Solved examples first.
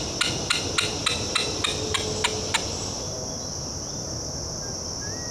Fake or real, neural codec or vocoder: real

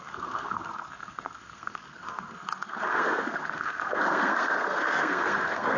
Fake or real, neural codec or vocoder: fake, codec, SNAC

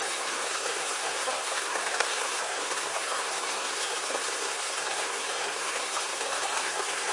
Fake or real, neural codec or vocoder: fake, codec, SNAC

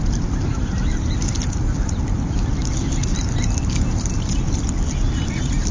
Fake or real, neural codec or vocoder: real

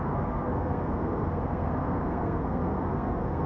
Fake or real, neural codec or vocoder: fake, codec, SNAC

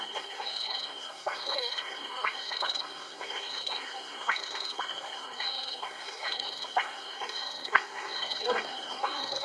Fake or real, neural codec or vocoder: fake, codec, SNAC